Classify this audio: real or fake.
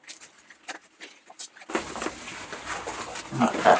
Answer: real